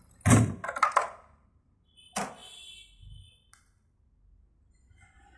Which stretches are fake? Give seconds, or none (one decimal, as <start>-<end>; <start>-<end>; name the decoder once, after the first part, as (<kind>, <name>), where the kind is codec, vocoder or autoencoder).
none